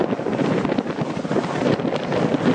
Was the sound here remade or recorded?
recorded